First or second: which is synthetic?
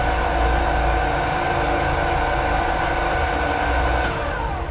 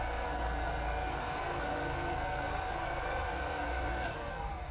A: second